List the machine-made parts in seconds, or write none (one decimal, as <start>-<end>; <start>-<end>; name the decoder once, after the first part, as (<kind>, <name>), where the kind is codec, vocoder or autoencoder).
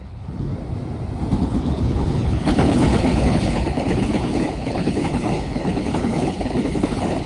0.0-0.5 (codec, HILCodec); 1.4-7.3